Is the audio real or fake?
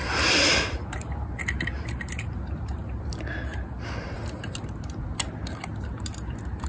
real